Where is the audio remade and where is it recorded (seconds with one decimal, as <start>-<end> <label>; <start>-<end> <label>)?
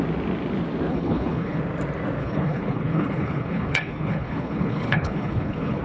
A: 0.0-0.9 recorded; 0.9-1.6 remade; 1.6-2.2 recorded; 2.2-5.8 remade